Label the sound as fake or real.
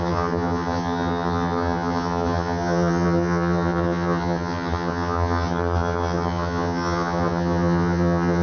fake